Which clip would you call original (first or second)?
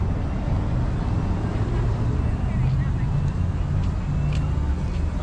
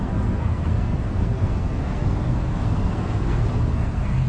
first